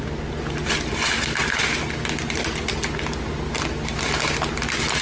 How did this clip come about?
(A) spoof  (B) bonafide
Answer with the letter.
B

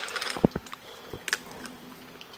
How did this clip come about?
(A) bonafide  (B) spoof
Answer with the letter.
A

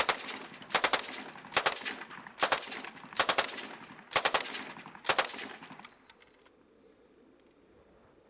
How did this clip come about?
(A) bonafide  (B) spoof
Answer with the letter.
A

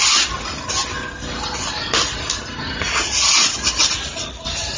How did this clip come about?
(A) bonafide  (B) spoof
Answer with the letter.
A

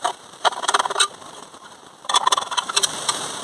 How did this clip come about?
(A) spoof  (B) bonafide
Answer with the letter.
A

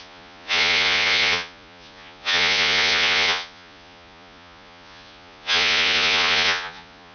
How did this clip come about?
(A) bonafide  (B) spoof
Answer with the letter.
B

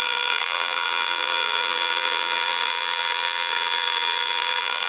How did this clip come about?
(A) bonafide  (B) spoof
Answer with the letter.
B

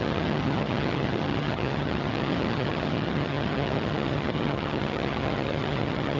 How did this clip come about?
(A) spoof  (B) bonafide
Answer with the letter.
A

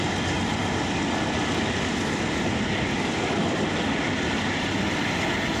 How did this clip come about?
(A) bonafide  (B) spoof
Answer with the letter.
A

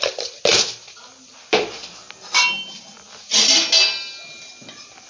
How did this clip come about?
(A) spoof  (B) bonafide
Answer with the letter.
B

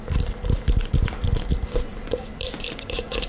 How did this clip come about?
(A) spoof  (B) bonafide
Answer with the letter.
A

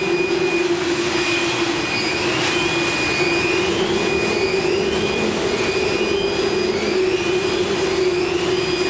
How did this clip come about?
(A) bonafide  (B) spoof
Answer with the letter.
A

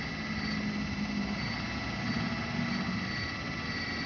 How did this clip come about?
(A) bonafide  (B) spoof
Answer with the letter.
B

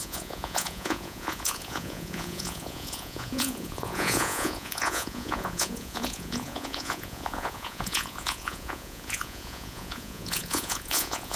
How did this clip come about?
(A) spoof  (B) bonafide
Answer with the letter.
A